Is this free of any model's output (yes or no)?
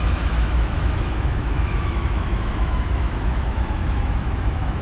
no